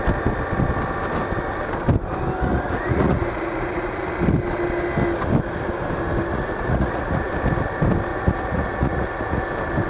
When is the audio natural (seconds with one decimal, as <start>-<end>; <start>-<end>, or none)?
0.0-2.5; 4.1-6.3; 7.3-8.1; 9.4-9.9